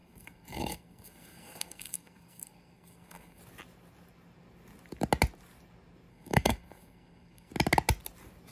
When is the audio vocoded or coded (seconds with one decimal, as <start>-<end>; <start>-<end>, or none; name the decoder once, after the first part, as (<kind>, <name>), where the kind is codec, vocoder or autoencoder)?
0.0-3.4 (codec, SNAC); 6.1-7.5